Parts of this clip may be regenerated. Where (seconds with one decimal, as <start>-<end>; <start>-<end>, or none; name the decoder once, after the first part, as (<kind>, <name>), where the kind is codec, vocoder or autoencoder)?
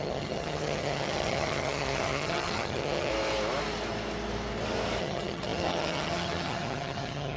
0.0-3.1 (vocoder, HiFi-GAN); 5.0-7.4